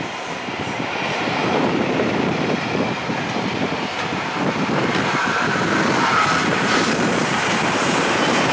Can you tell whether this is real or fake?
fake